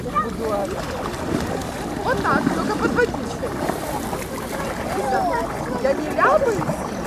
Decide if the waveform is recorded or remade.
remade